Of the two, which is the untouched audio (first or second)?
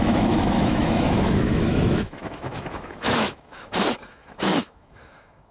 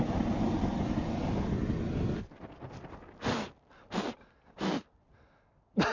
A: second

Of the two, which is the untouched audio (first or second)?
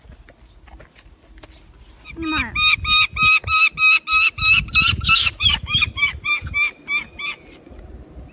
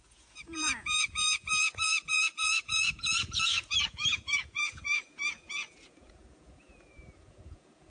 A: first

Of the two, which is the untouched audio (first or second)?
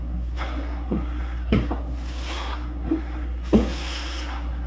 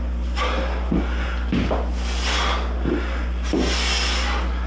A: second